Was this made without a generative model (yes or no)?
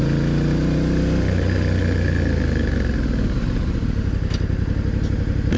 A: yes